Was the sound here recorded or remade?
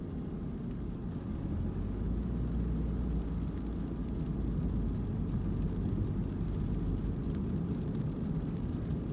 recorded